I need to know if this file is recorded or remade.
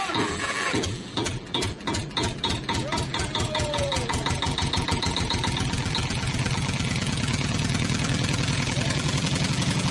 remade